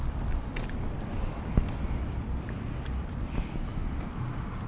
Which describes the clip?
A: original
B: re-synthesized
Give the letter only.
A